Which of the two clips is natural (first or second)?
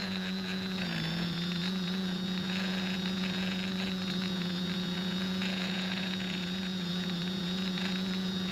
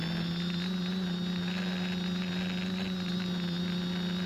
second